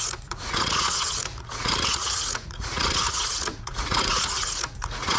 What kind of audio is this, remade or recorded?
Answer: remade